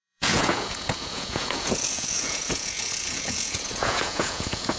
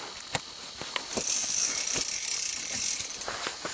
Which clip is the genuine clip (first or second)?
second